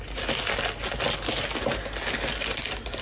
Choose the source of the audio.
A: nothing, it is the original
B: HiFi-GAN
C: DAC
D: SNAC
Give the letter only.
A